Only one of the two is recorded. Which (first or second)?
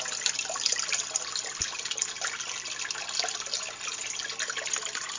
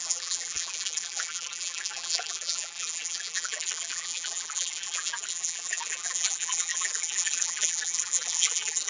first